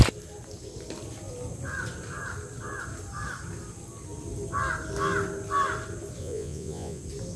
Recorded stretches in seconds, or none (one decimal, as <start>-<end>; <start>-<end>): 0.0-6.2; 7.0-7.4